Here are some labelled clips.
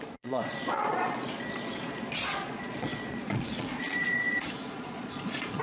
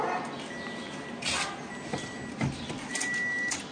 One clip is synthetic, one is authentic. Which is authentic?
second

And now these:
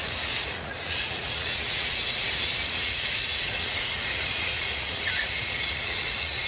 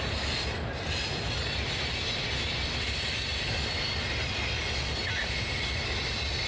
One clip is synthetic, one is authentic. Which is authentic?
second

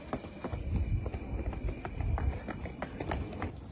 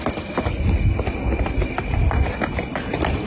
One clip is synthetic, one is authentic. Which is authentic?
second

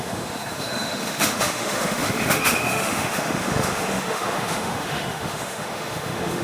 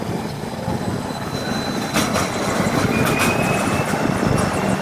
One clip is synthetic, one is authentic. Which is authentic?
second